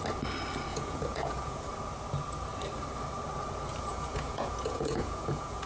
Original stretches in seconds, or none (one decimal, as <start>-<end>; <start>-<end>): 0.0-0.7; 1.6-3.9

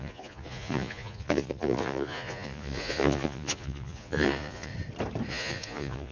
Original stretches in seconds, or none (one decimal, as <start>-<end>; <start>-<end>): 4.7-5.3